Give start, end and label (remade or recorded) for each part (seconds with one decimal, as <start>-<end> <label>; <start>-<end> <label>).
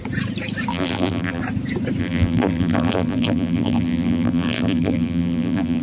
0.0-0.7 recorded; 0.7-1.4 remade; 1.4-2.0 recorded; 2.0-5.8 remade